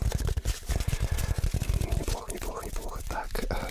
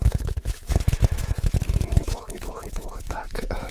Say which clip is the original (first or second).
first